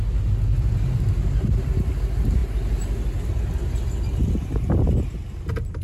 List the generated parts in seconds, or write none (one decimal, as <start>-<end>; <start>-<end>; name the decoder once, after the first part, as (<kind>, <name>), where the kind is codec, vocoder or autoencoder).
none